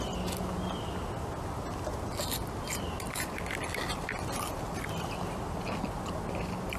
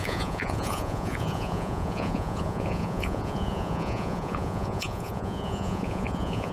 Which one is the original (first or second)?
first